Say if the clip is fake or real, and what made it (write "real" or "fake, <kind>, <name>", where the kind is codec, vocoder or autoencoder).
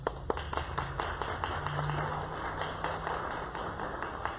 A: real